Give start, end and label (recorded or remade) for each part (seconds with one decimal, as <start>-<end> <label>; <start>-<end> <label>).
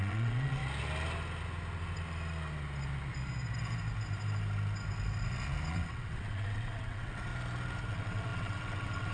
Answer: 0.0-0.6 remade; 0.6-5.7 recorded; 5.7-7.3 remade; 7.3-7.9 recorded; 7.9-9.1 remade